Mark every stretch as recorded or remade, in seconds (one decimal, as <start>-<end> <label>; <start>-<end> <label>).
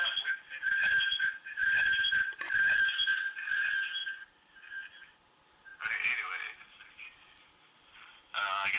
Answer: 0.0-8.8 recorded